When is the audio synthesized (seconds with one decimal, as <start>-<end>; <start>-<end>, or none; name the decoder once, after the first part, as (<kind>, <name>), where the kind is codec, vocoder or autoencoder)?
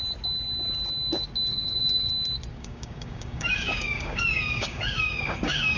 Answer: 1.5-2.1 (codec, DAC); 2.5-5.8